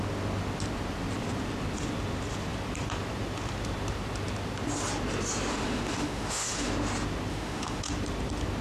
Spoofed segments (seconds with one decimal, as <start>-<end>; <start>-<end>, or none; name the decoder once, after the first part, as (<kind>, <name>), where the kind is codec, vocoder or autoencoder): 5.5-6.7 (autoencoder, DAC-VAE); 7.3-7.8

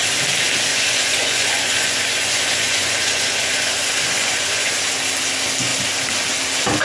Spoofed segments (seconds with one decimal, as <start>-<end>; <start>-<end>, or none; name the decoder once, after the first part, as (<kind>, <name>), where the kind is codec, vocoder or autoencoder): 0.7-4.8 (vocoder, Vocos)

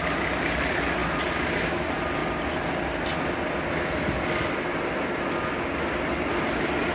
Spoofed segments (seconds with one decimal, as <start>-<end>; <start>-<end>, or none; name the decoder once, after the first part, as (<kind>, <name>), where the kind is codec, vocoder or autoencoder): none

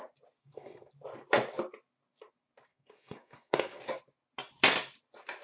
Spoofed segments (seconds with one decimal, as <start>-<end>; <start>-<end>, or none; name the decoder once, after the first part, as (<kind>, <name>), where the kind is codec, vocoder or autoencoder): 0.4-0.9 (codec, SNAC); 2.7-3.8

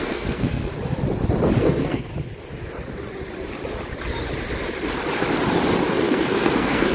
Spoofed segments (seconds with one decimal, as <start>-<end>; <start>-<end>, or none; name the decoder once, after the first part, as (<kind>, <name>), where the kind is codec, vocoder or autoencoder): 0.0-0.7 (codec, SNAC); 1.6-2.1; 5.9-6.9

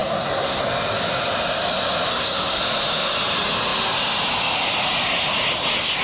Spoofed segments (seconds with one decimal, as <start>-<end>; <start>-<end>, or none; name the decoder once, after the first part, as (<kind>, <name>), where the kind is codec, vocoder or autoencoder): 0.0-0.6 (codec, SNAC); 2.1-2.6

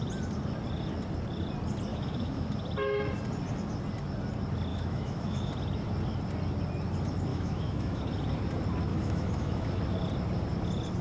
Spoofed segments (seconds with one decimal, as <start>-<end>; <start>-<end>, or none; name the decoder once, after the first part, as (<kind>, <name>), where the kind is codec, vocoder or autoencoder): 1.9-2.5 (autoencoder, DAC-VAE); 4.7-5.5; 7.3-8.0; 8.9-9.8